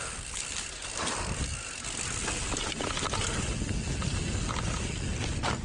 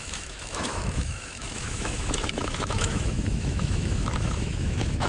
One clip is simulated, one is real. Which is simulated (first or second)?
second